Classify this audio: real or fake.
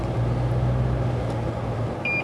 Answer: real